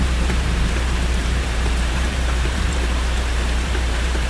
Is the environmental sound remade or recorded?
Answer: remade